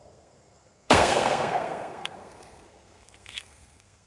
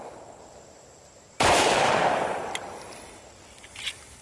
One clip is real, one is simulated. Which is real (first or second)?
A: second